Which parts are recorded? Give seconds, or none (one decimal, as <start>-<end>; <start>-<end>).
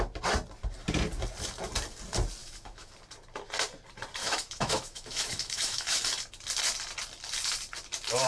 0.0-2.4; 2.9-4.2; 6.0-8.3